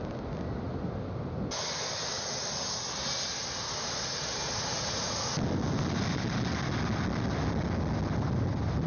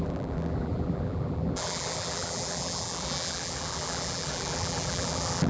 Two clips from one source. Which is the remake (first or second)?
second